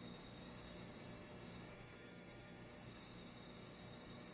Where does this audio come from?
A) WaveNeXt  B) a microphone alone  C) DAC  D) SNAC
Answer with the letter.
C